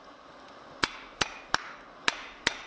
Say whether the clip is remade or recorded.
recorded